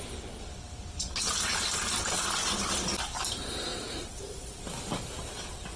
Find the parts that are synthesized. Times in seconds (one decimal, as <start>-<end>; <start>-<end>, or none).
none